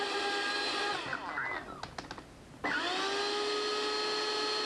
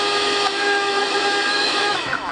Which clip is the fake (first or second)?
second